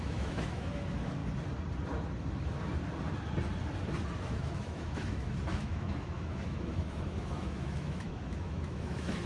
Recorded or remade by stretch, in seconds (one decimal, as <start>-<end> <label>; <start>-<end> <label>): 0.0-1.2 remade; 1.2-4.2 recorded; 4.2-9.3 remade